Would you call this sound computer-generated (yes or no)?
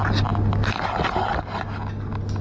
no